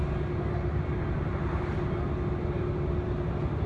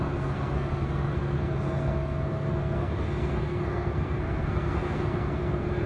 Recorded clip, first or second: first